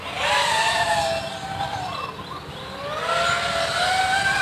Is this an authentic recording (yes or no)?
yes